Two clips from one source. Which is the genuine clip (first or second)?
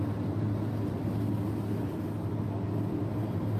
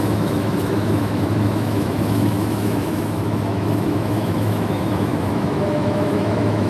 first